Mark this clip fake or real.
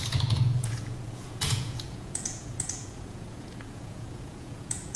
fake